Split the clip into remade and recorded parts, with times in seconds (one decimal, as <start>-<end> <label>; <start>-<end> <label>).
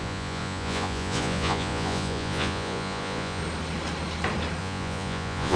0.0-3.4 remade; 3.4-4.6 recorded; 4.6-5.6 remade